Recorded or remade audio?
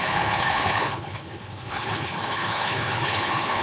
remade